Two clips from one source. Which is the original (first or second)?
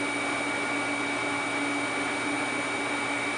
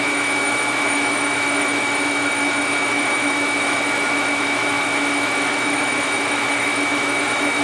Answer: first